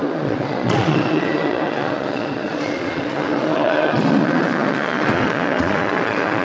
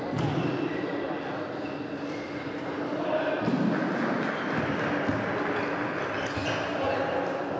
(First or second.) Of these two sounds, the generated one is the first